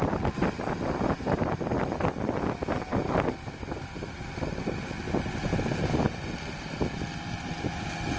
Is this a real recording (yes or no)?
yes